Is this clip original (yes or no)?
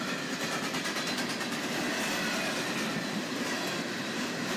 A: yes